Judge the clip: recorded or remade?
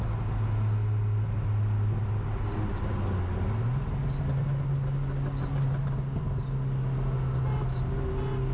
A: recorded